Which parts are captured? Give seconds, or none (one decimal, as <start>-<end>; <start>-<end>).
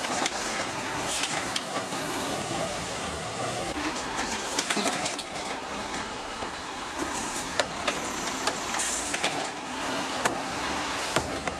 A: 7.7-9.0